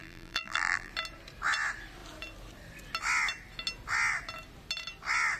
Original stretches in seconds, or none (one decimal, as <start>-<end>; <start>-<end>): 0.9-5.4

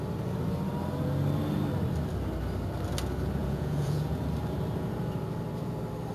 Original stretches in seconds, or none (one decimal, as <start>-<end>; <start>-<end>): 0.0-3.4; 4.2-6.1

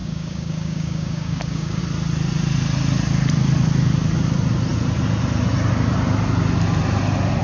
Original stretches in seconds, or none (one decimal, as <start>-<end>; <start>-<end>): 1.8-7.4

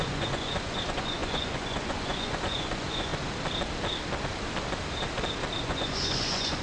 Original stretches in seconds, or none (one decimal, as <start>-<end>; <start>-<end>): 3.1-5.6

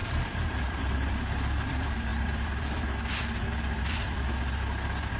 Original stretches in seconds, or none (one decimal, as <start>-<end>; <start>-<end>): none

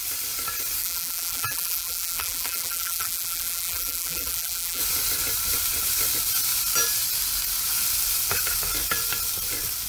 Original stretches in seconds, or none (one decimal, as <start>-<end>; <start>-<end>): 0.0-0.8; 4.8-9.9